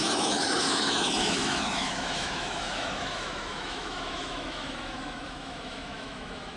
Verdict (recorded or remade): remade